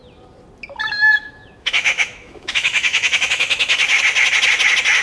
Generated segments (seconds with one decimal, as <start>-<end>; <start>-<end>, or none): 1.0-4.0